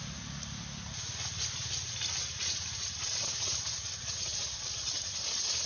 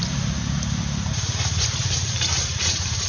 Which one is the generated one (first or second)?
second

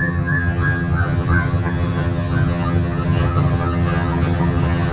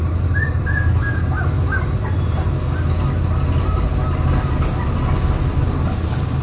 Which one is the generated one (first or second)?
first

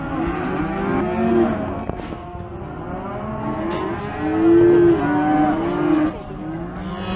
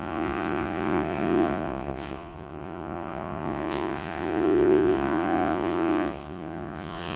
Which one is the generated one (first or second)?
second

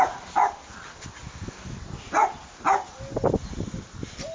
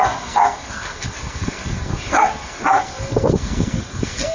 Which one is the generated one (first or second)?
second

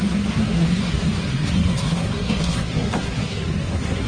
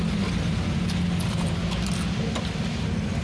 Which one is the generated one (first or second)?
first